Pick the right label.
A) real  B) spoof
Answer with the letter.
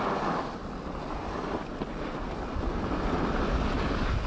A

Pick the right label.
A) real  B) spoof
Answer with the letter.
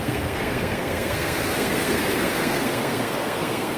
B